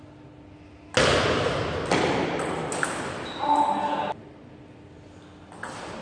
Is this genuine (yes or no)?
yes